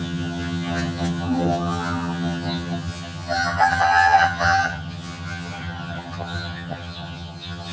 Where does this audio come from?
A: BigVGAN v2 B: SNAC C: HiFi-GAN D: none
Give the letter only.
C